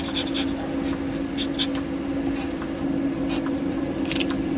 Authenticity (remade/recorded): recorded